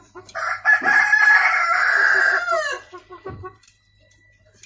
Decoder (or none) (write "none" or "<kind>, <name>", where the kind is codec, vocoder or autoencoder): vocoder, BigVGAN v2